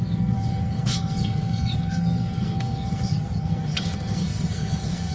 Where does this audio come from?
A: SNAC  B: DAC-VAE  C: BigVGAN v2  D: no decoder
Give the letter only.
A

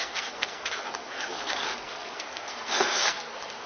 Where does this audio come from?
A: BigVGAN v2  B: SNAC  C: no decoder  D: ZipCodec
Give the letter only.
B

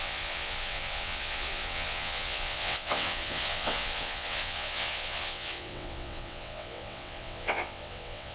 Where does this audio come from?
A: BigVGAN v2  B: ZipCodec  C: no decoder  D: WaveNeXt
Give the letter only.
D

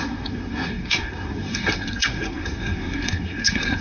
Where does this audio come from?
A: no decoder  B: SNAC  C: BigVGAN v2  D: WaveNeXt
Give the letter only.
B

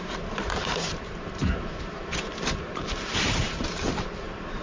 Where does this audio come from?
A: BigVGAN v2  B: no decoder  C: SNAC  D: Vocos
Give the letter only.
A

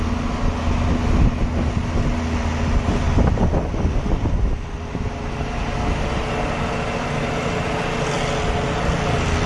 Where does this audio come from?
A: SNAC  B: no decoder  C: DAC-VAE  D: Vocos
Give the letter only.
B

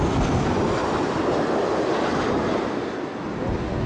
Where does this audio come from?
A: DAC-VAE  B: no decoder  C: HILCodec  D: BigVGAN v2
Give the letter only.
B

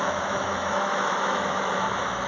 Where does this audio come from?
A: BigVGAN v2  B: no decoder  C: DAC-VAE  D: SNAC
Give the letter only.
C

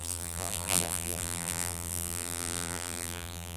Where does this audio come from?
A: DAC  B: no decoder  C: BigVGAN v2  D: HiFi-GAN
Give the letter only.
C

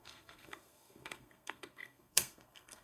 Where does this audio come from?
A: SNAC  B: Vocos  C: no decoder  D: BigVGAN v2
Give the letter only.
A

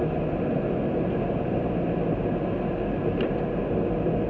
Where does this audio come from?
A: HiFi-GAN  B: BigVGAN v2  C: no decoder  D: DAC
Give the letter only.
C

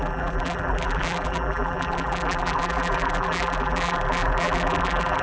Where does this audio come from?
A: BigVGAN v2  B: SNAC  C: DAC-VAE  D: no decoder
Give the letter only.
A